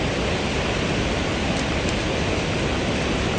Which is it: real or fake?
real